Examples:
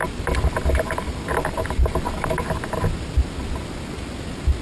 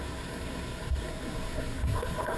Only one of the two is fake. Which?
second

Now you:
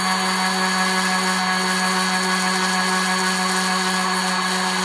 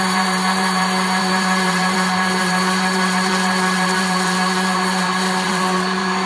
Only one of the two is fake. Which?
second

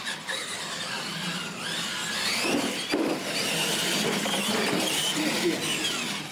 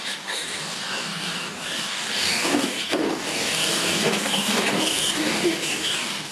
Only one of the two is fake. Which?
second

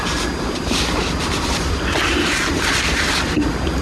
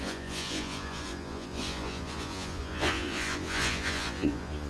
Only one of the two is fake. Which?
second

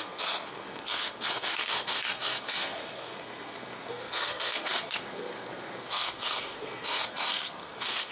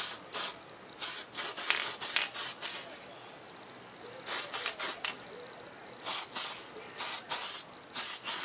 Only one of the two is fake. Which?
first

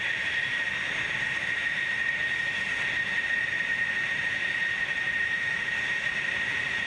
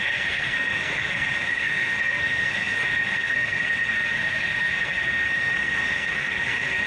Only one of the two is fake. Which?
second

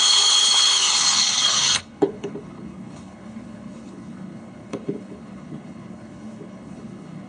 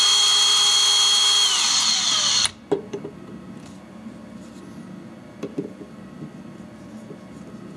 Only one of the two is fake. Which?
first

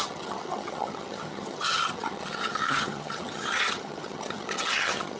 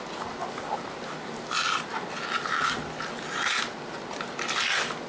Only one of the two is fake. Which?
first